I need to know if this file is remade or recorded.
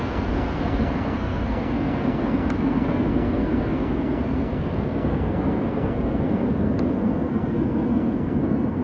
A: remade